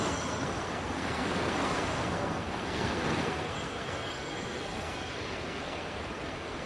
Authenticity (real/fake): fake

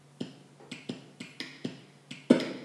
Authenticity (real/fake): real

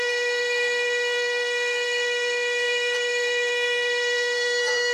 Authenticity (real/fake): fake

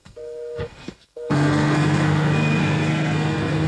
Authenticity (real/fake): fake